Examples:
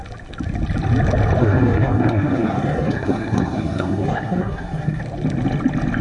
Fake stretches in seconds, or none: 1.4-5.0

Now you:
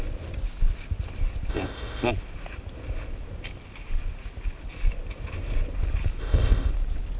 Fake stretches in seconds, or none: 1.5-2.1; 6.2-6.7